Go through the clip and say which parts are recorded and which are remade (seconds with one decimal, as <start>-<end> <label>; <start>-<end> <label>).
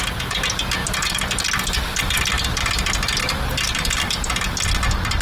0.0-5.2 recorded